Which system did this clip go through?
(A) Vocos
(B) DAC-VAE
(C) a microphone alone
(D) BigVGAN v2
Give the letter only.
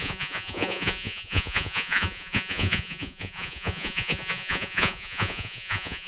A